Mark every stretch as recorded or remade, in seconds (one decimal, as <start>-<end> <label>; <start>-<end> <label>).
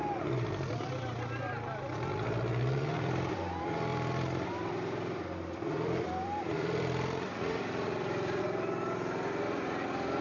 0.0-10.2 remade